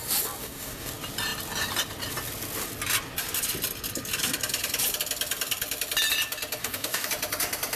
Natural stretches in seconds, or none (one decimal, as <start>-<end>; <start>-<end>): 0.0-0.4; 0.9-6.6; 7.1-7.8